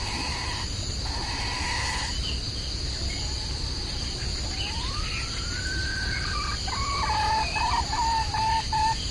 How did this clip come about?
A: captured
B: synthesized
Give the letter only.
A